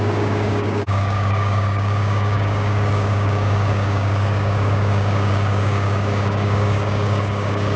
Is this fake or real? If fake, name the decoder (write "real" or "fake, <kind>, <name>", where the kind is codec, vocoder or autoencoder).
fake, codec, DAC